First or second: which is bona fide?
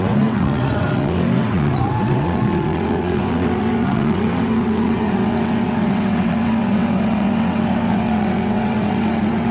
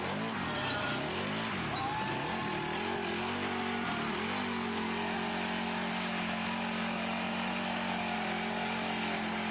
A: second